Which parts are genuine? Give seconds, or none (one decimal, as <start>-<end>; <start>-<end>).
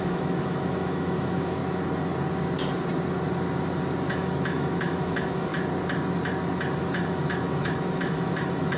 1.6-4.1; 5.5-6.8